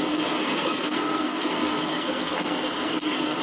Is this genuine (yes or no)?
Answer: no